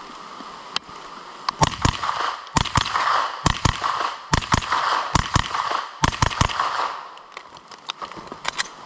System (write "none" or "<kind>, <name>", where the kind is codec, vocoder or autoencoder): none